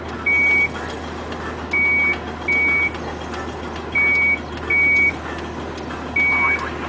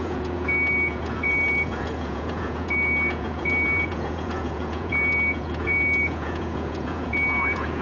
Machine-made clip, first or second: second